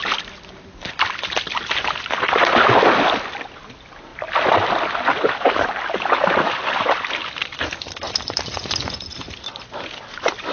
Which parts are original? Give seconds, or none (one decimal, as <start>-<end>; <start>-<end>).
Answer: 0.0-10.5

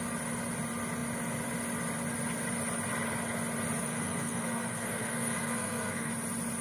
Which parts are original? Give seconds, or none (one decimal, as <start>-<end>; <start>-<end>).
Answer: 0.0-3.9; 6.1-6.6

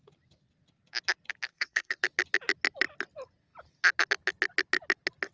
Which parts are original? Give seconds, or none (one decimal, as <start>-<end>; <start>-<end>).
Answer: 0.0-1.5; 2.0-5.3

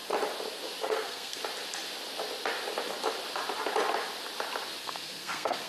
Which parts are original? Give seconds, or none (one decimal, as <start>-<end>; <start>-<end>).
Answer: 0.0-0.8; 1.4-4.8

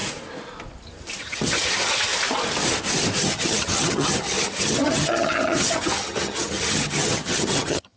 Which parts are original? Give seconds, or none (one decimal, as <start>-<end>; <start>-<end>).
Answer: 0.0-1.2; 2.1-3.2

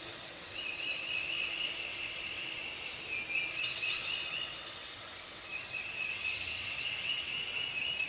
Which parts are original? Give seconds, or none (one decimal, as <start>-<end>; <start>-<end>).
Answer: 2.6-3.5; 7.3-8.1